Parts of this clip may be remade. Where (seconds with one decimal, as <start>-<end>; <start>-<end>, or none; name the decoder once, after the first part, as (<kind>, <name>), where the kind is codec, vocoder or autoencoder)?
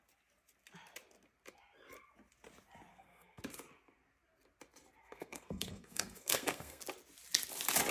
2.9-3.4 (codec, SNAC); 5.0-6.8